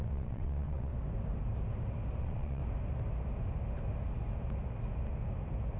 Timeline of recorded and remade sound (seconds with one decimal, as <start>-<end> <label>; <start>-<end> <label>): 0.0-0.9 remade; 0.9-2.2 recorded; 2.2-2.6 remade; 2.6-5.8 recorded